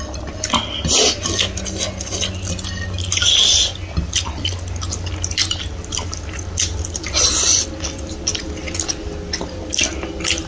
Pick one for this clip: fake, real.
real